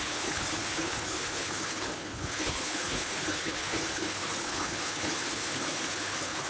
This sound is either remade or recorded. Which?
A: remade